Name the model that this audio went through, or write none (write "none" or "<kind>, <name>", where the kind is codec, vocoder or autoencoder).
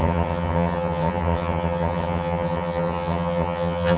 vocoder, HiFi-GAN